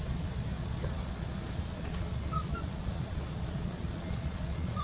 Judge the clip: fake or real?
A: fake